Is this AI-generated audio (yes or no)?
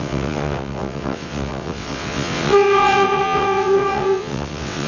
yes